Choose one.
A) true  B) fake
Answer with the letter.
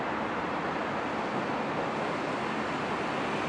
A